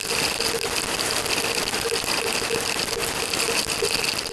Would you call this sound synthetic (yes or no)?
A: no